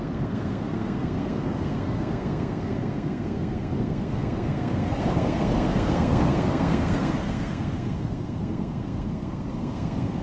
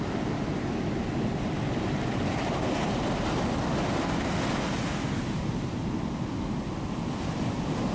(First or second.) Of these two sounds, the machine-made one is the first